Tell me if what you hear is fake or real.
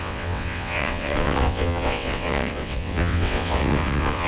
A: fake